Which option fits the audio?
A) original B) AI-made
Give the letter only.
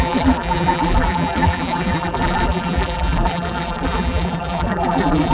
B